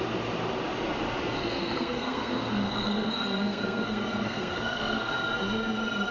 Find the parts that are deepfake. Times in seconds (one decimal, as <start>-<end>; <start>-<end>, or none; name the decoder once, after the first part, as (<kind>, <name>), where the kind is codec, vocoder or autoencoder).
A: 1.4-5.1 (codec, SNAC)